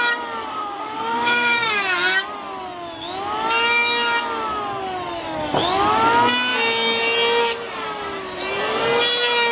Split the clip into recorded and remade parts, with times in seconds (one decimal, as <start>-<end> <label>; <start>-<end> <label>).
0.0-0.5 recorded; 0.5-1.7 remade; 1.7-9.5 recorded